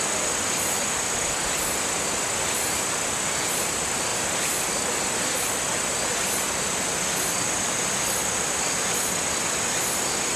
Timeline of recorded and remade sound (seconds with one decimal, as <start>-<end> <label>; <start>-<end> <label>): 0.0-10.4 recorded